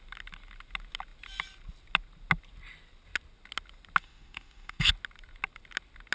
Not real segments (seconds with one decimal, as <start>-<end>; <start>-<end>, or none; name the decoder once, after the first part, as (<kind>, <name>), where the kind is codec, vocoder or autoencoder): 4.0-4.9 (autoencoder, DAC-VAE)